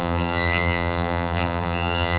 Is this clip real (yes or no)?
no